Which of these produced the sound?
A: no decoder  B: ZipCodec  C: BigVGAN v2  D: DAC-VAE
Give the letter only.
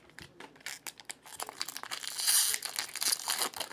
A